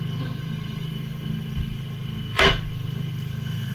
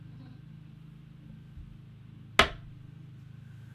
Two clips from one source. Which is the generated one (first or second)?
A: first